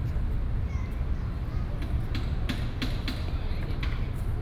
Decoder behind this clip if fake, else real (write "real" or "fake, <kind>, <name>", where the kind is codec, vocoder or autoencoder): real